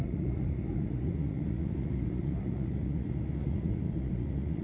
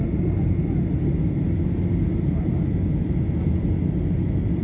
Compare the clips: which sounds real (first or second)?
second